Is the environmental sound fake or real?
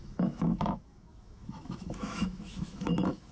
fake